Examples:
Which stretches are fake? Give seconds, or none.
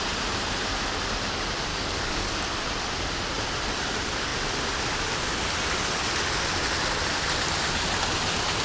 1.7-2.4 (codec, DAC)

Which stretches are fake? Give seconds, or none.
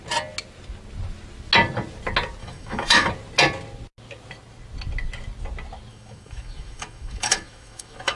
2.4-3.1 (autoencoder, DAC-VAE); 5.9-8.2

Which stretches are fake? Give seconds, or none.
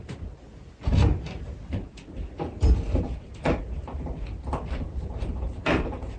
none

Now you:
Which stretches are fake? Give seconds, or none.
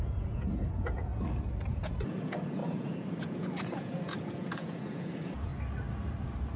0.0-1.1 (vocoder, Vocos); 1.7-5.5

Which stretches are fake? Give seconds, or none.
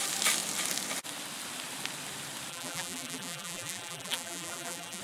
2.5-5.0 (vocoder, BigVGAN v2)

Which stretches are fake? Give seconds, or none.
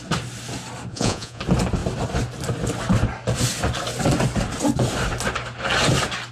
0.9-1.4 (vocoder, Vocos)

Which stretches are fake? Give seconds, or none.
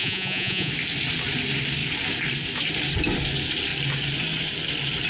0.0-0.7 (vocoder, Vocos)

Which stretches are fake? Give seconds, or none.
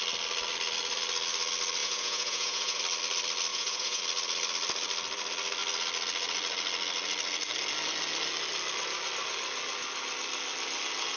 1.8-2.8 (vocoder, Vocos); 3.5-4.0